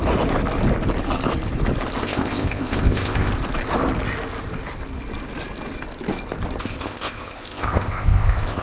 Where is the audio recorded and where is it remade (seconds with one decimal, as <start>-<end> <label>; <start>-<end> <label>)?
0.0-2.0 recorded; 2.0-3.3 remade; 3.3-6.6 recorded; 6.6-8.6 remade